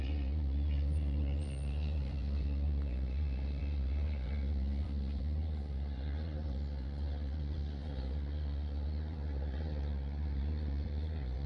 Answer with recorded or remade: remade